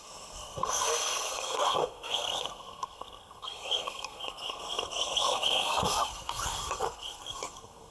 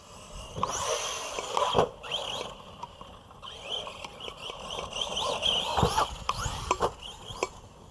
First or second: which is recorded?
second